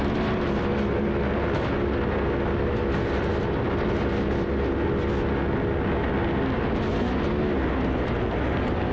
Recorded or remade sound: recorded